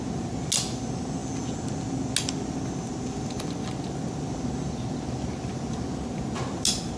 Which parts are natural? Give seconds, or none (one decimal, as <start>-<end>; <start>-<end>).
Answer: 0.0-7.0